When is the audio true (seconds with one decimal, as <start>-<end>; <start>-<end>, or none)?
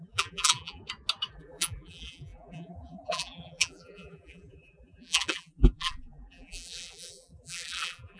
0.8-1.3